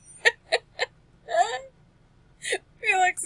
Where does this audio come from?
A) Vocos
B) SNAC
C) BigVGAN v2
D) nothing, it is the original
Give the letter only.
D